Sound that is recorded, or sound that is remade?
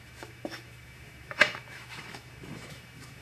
remade